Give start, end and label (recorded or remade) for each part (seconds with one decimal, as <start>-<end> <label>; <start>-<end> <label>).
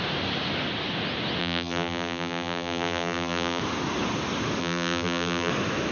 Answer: 0.0-1.4 recorded; 1.4-3.6 remade; 3.6-4.6 recorded; 4.6-5.5 remade; 5.5-5.9 recorded